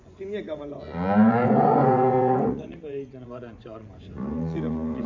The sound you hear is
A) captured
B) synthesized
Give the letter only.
B